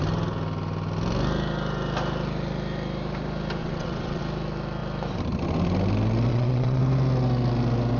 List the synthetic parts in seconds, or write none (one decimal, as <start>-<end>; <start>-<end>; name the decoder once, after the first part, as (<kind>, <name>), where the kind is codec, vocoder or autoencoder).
3.6-4.2 (vocoder, WaveNeXt); 6.3-6.8